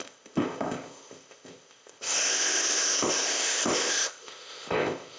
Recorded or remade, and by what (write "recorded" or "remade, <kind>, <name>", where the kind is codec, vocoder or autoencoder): remade, codec, ZipCodec